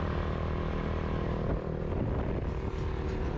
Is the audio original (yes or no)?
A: yes